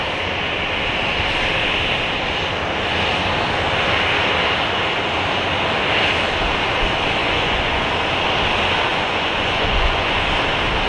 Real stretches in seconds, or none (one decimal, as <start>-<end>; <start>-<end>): 0.0-7.2; 7.9-8.9; 10.3-10.9